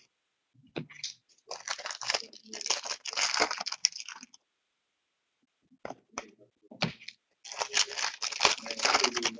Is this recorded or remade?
recorded